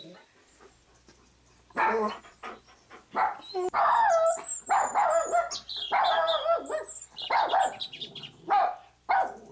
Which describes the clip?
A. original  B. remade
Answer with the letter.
A